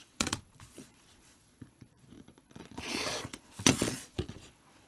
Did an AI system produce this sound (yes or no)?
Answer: yes